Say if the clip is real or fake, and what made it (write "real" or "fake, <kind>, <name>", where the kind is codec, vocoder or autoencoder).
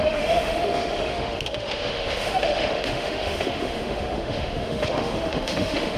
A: fake, autoencoder, DAC-VAE